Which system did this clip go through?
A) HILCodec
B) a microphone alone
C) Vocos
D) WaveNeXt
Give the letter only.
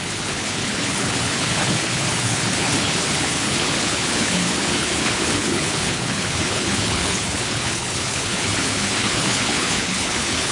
A